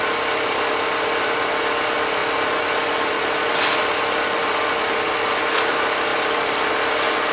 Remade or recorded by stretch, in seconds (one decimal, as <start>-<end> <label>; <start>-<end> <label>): 0.0-7.3 recorded